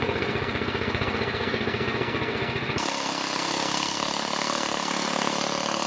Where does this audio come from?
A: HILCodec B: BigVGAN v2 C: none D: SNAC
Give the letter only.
D